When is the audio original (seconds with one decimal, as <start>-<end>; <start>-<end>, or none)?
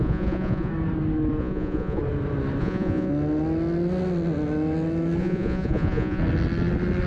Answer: 0.7-1.4; 2.0-2.6; 3.1-5.2; 6.2-7.1